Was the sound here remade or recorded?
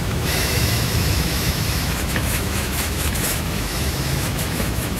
remade